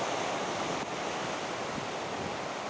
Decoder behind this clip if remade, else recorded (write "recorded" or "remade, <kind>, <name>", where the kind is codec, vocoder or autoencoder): recorded